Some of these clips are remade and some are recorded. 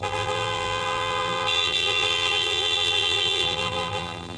remade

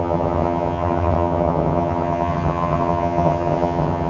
remade